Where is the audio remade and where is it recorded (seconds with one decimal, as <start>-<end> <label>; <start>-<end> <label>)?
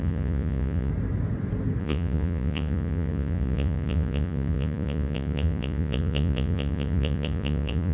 0.0-0.9 remade; 0.9-1.8 recorded; 1.8-7.9 remade